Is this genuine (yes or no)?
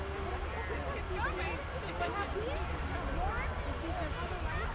yes